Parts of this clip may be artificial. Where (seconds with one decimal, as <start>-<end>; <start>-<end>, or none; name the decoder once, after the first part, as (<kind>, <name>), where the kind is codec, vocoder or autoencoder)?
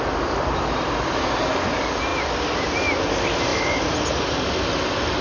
none